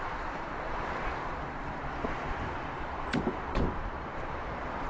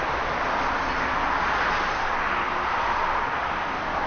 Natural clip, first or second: second